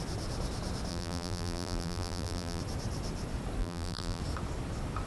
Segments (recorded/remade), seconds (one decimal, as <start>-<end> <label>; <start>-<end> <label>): 0.0-0.9 recorded; 0.9-2.6 remade; 2.6-3.6 recorded; 3.6-4.2 remade; 4.2-5.1 recorded